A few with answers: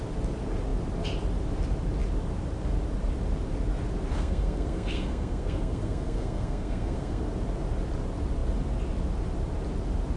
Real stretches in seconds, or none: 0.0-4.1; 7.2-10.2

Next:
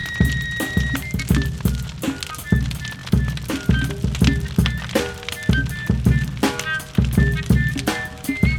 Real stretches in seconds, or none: 1.2-8.6

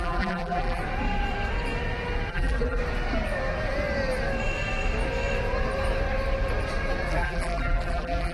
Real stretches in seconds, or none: 0.8-2.3; 2.8-7.1